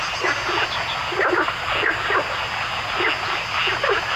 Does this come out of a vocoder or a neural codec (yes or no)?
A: no